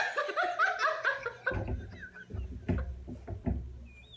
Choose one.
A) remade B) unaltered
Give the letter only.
B